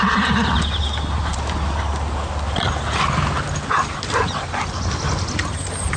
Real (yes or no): yes